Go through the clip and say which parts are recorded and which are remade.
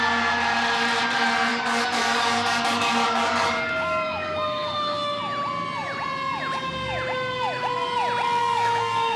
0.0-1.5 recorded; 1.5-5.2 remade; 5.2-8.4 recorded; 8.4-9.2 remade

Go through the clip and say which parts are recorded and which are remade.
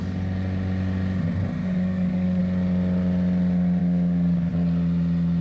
0.0-1.6 recorded; 1.6-2.4 remade; 2.4-3.8 recorded; 3.8-4.5 remade; 4.5-5.4 recorded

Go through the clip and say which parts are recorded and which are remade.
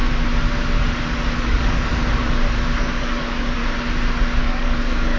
0.0-1.4 recorded; 1.4-1.9 remade; 1.9-2.8 recorded; 2.8-3.6 remade; 3.6-4.4 recorded; 4.4-5.2 remade